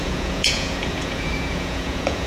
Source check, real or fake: fake